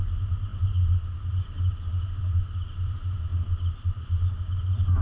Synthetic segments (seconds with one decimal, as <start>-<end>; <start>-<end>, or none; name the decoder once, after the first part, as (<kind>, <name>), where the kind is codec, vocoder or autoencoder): none